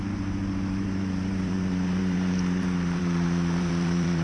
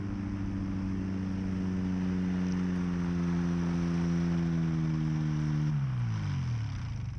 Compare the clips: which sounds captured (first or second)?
second